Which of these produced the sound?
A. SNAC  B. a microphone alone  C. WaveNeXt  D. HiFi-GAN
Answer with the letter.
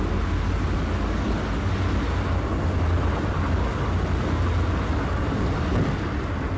B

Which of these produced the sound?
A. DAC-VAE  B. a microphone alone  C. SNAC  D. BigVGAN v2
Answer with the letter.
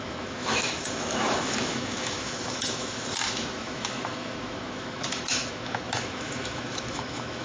A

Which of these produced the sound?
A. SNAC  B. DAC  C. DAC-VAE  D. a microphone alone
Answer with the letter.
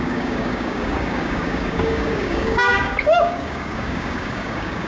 B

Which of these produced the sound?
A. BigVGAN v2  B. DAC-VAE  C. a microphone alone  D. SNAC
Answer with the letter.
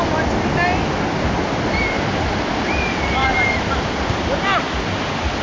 C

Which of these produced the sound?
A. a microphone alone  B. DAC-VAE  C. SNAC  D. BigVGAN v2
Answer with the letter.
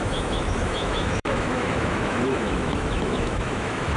B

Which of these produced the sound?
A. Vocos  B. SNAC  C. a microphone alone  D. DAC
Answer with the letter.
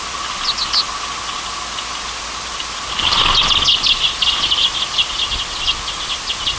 C